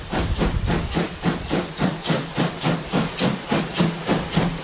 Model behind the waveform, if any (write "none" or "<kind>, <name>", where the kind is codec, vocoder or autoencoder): none